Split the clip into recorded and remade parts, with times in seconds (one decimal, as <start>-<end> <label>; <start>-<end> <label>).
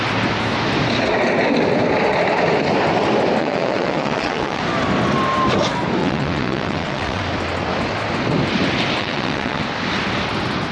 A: 0.0-3.4 recorded; 3.4-4.6 remade; 4.6-6.0 recorded; 6.0-7.2 remade; 7.2-9.0 recorded; 9.0-9.6 remade; 9.6-10.7 recorded